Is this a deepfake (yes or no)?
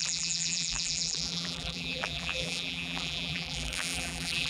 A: yes